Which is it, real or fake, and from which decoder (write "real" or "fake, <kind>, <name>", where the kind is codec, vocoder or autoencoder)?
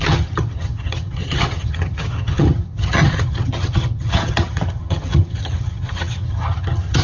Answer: fake, vocoder, HiFi-GAN